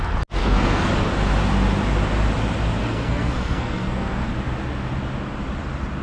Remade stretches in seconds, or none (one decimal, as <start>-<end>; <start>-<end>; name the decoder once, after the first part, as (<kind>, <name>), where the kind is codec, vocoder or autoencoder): 0.4-0.9 (codec, SNAC); 2.8-4.3